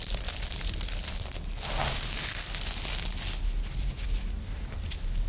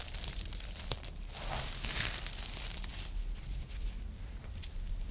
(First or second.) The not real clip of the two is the second